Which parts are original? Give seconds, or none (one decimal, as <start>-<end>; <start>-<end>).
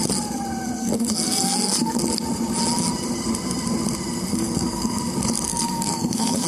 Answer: 0.0-0.8; 2.0-4.3; 5.0-5.5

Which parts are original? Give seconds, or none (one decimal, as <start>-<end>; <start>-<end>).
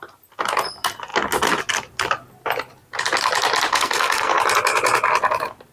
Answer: 0.0-3.7; 4.4-5.7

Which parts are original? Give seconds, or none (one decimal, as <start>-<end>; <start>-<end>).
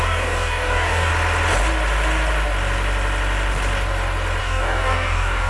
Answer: 1.1-4.4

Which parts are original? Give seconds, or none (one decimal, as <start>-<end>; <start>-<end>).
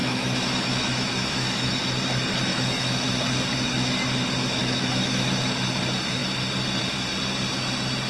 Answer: 1.7-2.5; 3.1-4.6; 5.3-8.1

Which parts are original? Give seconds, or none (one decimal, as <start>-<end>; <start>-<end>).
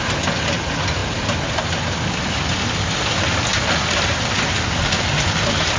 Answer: 0.0-5.8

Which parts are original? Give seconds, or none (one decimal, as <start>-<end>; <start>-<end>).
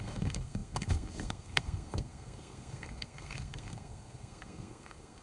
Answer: none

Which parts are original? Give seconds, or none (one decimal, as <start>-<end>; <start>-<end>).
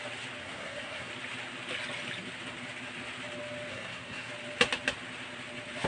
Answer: 0.0-0.4; 1.1-3.7; 4.3-5.9